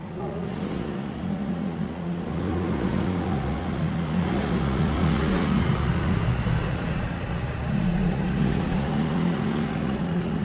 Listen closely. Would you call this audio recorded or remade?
remade